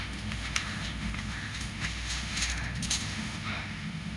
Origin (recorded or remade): remade